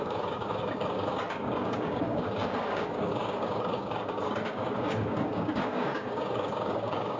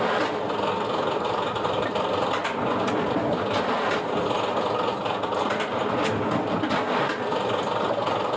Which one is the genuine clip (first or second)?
second